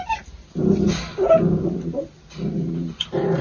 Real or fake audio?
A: real